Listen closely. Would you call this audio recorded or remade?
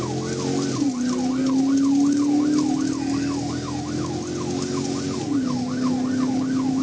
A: recorded